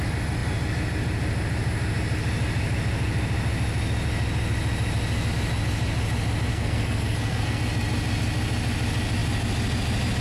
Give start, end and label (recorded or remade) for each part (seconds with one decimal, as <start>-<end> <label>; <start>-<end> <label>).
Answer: 0.0-6.5 recorded; 6.5-7.6 remade; 7.6-10.2 recorded